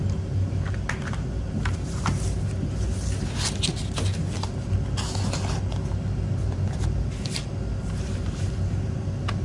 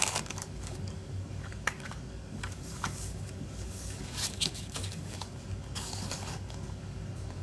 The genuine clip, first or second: first